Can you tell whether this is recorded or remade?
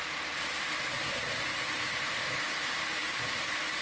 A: recorded